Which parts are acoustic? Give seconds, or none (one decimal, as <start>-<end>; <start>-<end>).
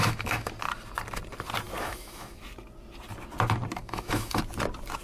0.5-1.8; 2.4-3.8; 4.4-5.0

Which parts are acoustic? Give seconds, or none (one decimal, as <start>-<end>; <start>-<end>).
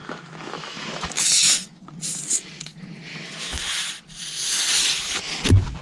1.8-3.1; 3.9-5.8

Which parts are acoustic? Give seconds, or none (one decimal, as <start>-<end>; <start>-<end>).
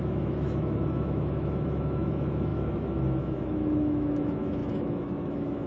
none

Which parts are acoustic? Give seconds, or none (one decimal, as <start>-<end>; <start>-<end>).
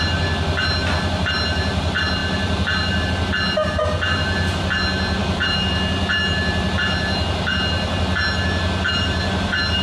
0.0-9.8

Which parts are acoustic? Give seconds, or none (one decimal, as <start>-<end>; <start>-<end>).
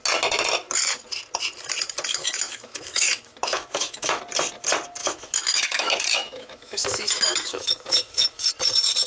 0.0-2.1; 4.2-5.0; 8.5-9.1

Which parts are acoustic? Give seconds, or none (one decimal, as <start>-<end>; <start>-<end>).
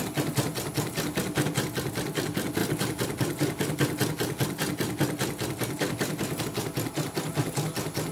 0.0-8.1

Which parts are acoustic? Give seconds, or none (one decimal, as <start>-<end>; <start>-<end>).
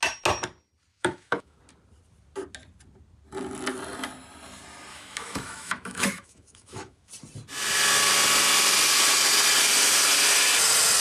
0.0-0.9; 1.6-4.9; 7.1-11.0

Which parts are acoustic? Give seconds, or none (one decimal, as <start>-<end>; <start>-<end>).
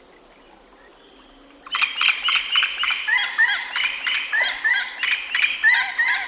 0.0-6.3